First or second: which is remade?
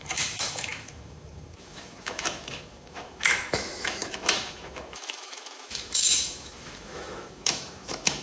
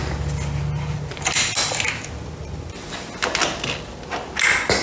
first